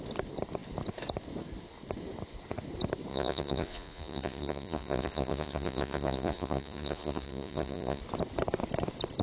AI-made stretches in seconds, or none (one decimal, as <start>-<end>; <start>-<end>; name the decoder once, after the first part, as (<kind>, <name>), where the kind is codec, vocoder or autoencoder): 3.1-8.0 (vocoder, Vocos)